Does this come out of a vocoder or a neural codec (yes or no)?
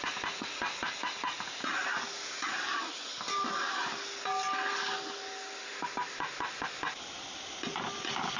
no